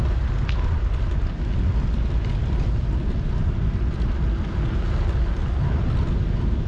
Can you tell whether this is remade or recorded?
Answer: recorded